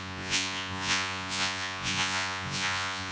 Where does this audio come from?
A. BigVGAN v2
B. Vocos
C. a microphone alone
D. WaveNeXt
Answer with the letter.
B